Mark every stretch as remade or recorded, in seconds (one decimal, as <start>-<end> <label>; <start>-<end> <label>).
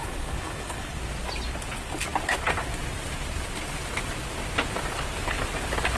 0.0-1.0 remade; 1.0-6.0 recorded